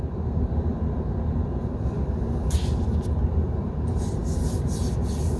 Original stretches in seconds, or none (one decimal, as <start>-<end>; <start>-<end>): 0.0-5.4